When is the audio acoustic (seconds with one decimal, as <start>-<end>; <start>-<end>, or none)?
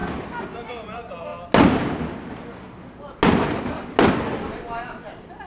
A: 0.0-5.5